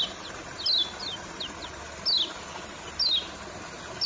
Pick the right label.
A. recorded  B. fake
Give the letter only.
A